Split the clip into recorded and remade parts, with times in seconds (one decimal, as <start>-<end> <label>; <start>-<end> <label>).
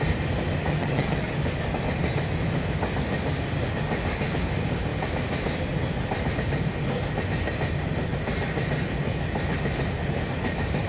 0.0-0.7 recorded; 0.7-1.3 remade; 1.3-10.9 recorded